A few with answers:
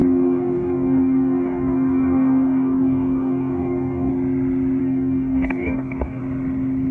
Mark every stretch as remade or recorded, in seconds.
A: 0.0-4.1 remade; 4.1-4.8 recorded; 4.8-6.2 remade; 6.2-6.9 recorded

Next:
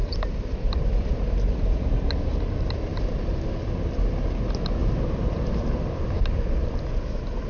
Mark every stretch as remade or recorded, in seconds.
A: 0.0-1.9 remade; 1.9-4.8 recorded; 4.8-6.2 remade; 6.2-7.5 recorded

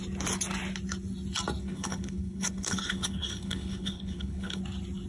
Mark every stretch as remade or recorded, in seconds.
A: 0.0-1.6 recorded; 1.6-4.6 remade; 4.6-5.1 recorded

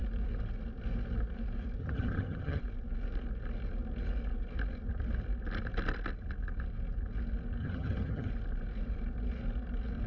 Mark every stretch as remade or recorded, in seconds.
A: 0.0-1.8 recorded; 1.8-2.6 remade; 2.6-7.6 recorded; 7.6-8.3 remade; 8.3-10.1 recorded

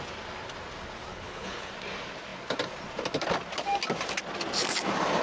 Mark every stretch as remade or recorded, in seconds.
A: 0.0-1.1 recorded; 1.1-1.7 remade; 1.7-5.2 recorded